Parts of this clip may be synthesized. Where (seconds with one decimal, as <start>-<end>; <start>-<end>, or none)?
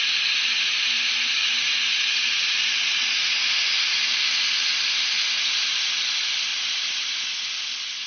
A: none